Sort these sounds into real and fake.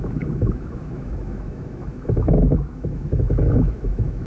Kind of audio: fake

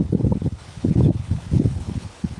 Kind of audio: fake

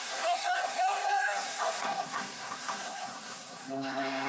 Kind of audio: fake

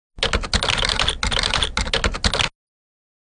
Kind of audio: real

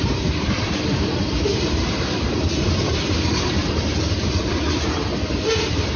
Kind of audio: fake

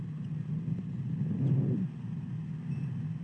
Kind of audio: real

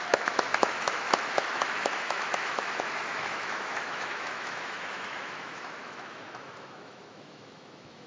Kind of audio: fake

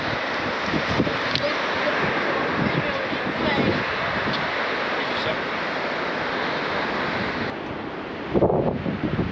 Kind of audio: real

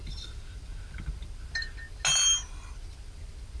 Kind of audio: real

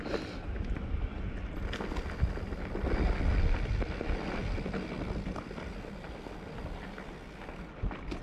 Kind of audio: real